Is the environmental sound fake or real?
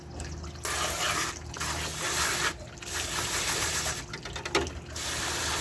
real